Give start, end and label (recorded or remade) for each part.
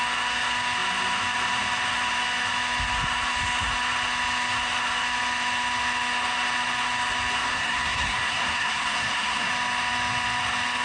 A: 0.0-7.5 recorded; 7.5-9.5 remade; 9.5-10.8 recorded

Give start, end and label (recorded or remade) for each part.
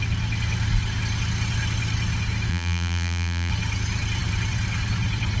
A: 0.0-2.5 recorded; 2.5-3.5 remade; 3.5-5.4 recorded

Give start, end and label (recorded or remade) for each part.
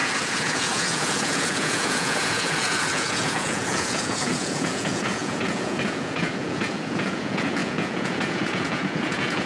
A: 0.0-9.5 remade